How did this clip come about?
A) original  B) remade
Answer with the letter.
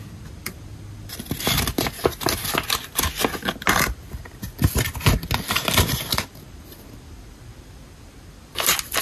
A